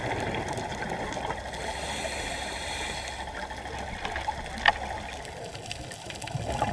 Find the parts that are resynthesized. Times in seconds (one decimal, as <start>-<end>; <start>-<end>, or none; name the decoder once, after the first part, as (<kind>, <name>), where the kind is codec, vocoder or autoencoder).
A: none